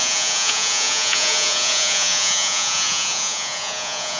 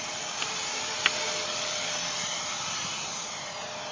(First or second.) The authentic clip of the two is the second